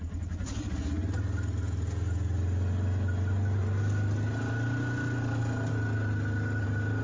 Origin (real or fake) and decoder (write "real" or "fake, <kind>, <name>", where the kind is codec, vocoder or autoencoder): real